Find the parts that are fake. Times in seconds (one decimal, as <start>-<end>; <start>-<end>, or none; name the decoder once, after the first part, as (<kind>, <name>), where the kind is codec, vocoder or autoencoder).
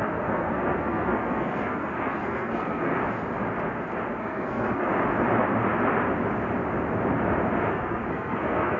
0.0-3.0 (codec, SNAC); 4.2-4.9; 7.7-8.8